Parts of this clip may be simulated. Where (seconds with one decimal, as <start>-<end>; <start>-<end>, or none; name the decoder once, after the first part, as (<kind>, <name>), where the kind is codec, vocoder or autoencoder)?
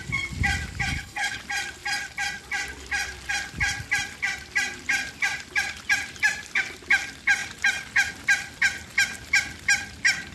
0.9-1.4 (codec, HILCodec)